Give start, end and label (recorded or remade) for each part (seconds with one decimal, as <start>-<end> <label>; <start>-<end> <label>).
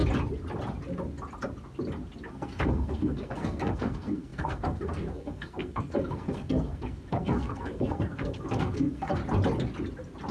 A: 0.0-2.3 recorded; 2.3-9.2 remade; 9.2-10.3 recorded